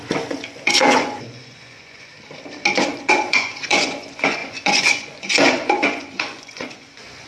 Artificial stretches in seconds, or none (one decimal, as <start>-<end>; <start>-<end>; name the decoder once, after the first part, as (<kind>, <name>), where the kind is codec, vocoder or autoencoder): 0.0-2.1 (vocoder, Vocos); 3.0-7.3